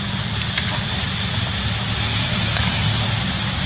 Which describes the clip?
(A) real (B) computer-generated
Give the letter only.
A